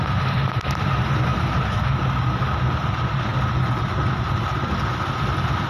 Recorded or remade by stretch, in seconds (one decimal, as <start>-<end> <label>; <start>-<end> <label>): 0.0-5.7 recorded